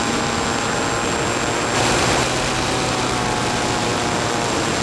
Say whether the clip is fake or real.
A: real